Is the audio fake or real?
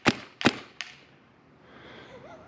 real